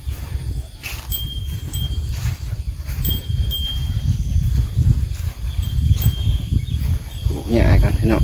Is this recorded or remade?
remade